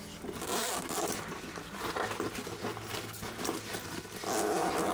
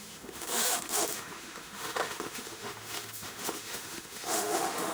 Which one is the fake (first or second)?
second